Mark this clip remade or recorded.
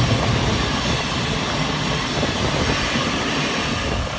recorded